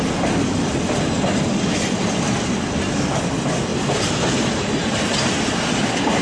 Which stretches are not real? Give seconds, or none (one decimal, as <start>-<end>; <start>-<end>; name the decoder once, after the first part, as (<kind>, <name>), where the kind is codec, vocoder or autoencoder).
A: none